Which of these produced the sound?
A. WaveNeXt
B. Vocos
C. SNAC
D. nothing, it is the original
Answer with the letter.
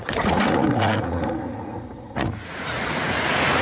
B